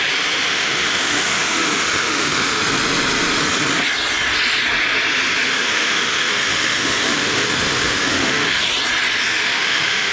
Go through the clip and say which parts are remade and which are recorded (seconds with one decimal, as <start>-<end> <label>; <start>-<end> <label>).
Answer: 0.0-0.5 recorded; 0.5-2.6 remade; 2.6-5.4 recorded; 5.4-8.7 remade; 8.7-9.3 recorded; 9.3-10.1 remade